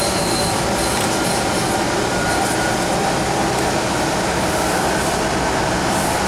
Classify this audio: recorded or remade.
recorded